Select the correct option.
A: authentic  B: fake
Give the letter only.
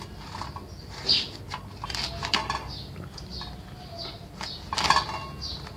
A